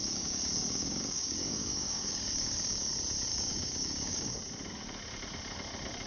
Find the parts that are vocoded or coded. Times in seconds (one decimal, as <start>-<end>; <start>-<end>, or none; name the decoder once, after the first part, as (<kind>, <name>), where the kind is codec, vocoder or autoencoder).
0.0-2.9 (codec, DAC); 3.3-4.3